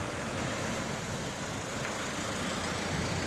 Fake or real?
real